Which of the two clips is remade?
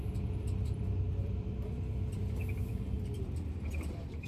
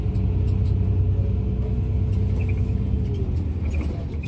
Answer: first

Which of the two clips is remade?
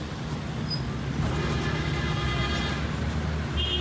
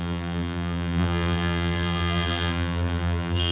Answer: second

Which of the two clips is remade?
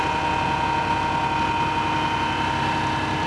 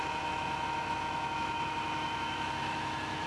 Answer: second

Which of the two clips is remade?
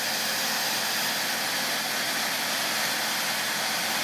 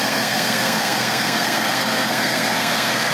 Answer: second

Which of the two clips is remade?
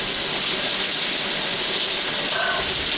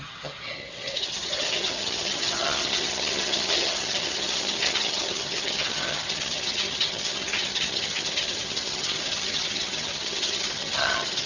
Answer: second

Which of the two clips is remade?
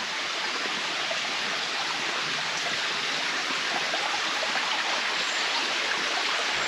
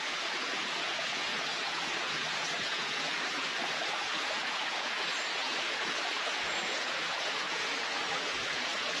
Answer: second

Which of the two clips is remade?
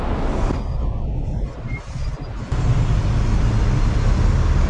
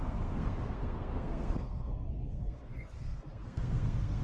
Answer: second